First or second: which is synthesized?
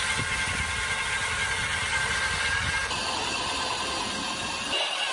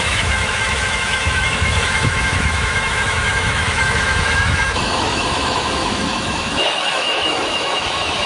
second